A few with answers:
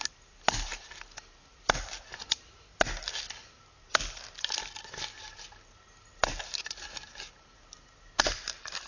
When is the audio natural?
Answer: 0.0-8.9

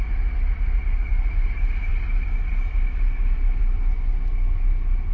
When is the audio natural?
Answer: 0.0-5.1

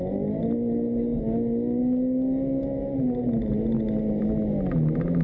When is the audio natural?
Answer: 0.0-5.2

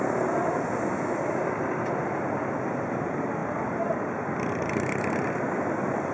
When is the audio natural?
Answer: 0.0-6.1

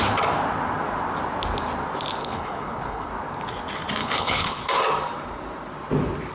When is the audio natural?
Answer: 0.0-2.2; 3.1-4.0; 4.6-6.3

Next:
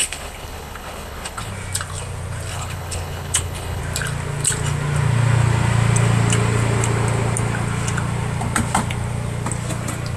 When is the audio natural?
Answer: 1.5-2.5; 3.8-10.2

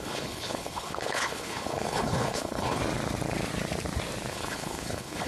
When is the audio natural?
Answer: 2.8-4.3

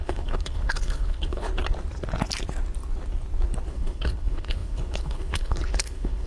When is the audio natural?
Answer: 1.5-3.7